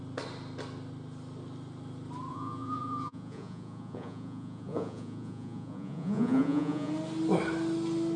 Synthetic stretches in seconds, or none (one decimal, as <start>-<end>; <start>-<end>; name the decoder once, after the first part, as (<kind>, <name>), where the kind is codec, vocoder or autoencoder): 2.3-6.9 (vocoder, Vocos)